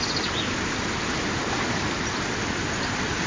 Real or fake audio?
real